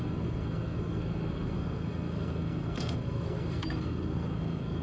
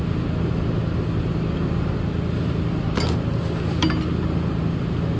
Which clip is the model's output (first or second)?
first